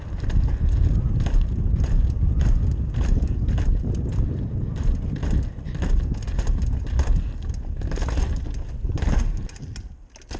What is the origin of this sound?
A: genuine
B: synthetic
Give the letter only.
A